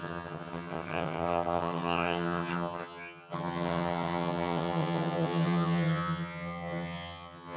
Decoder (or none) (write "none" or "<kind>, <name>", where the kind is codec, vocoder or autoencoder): vocoder, HiFi-GAN